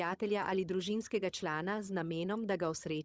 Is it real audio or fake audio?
fake